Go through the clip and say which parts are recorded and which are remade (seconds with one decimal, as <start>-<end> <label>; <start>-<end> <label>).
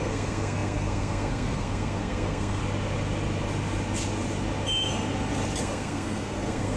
0.0-2.6 remade; 2.6-5.6 recorded; 5.6-6.8 remade